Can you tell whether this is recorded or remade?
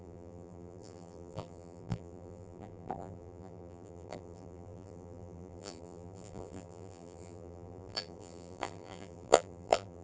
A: remade